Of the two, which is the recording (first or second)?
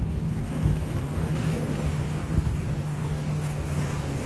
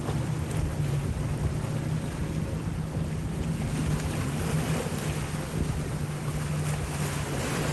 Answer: second